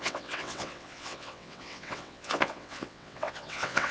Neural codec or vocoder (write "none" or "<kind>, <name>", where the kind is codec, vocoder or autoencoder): vocoder, WaveNeXt